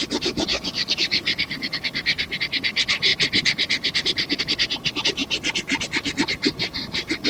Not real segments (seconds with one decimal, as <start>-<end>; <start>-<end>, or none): 0.5-2.4